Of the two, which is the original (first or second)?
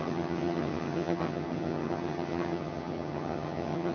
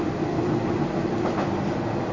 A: second